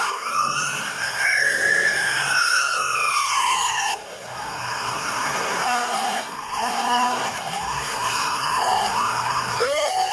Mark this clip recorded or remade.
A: remade